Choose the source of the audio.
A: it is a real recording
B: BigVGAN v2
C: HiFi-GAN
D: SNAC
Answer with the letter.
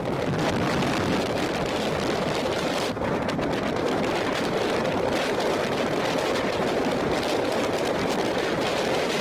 A